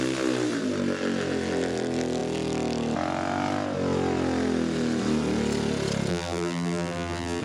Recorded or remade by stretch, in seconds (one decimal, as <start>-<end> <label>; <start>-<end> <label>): 0.0-6.1 recorded; 6.1-7.4 remade